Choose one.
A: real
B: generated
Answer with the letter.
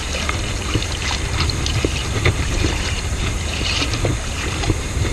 B